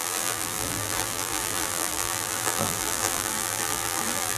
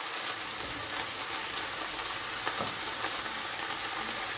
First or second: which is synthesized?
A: first